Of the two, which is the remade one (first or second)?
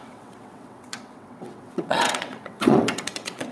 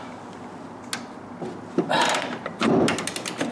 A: first